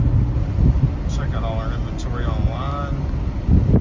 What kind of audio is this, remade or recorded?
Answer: recorded